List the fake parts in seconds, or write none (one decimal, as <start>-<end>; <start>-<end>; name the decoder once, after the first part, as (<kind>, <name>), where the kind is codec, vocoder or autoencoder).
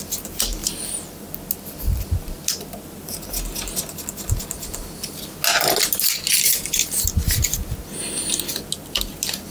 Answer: 0.6-1.3 (vocoder, BigVGAN v2)